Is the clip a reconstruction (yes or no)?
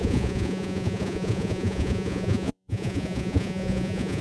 yes